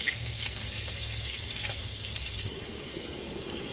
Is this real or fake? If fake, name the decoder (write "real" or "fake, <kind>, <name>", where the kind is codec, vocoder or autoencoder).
fake, codec, SNAC